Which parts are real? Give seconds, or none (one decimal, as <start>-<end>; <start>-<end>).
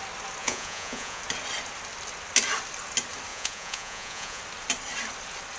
0.0-0.4; 1.2-3.3; 4.4-5.6